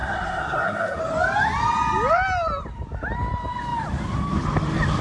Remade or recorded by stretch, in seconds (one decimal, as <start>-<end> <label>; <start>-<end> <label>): 0.0-1.0 remade; 1.0-5.0 recorded